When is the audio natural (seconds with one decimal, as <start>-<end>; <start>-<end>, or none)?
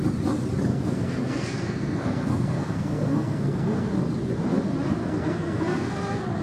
0.0-0.7; 3.9-5.0